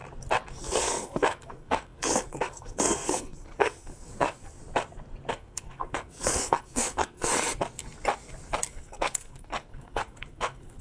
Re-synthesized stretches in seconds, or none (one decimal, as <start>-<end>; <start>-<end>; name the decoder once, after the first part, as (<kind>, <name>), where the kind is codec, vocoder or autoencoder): 0.6-4.6 (codec, SNAC); 5.3-7.3; 8.7-10.8